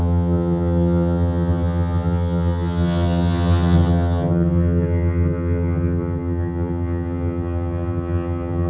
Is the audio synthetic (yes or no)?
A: yes